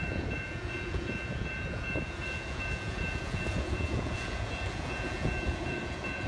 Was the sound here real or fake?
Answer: fake